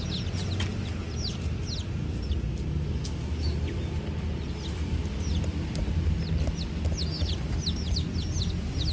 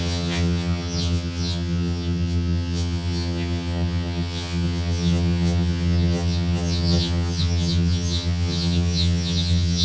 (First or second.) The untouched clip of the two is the first